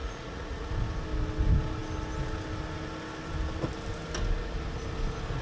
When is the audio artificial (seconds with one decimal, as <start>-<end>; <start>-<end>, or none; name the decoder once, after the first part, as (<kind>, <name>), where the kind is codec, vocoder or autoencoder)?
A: 0.0-0.7 (vocoder, Vocos)